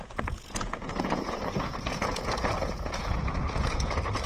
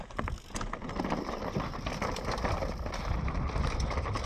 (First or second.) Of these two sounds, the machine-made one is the first